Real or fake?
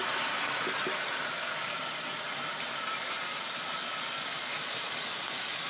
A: real